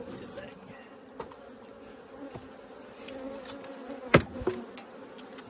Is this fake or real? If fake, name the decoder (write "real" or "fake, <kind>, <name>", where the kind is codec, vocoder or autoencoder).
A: real